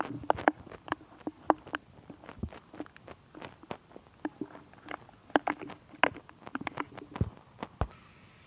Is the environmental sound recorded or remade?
recorded